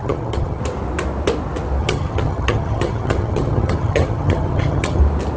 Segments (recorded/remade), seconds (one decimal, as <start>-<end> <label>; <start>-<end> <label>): 0.0-0.6 remade; 0.6-1.8 recorded; 1.8-5.0 remade; 5.0-5.4 recorded

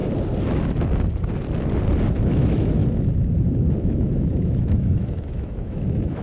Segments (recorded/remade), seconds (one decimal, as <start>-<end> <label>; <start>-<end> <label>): 0.0-2.3 recorded; 2.3-2.8 remade; 2.8-3.8 recorded; 3.8-6.2 remade